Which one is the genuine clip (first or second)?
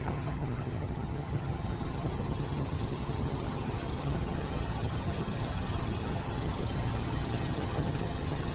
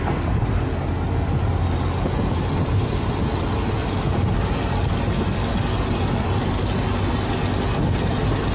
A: second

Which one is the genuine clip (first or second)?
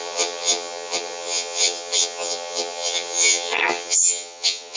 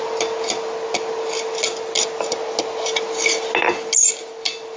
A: second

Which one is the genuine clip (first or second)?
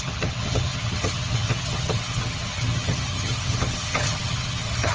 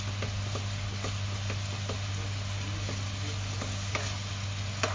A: second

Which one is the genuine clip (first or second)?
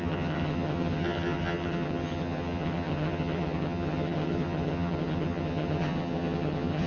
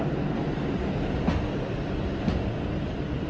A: second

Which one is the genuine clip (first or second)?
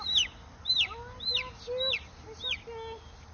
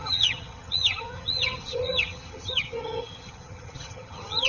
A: first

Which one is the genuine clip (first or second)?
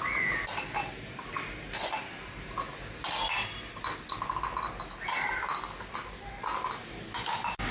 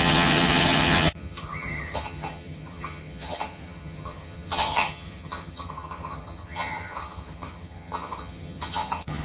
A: first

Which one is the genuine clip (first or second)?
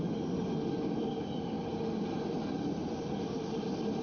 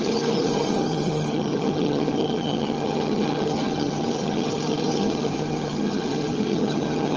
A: first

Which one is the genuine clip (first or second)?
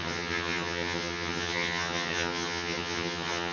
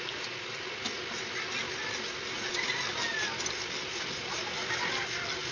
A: second